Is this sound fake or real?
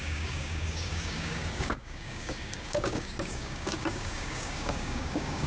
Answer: fake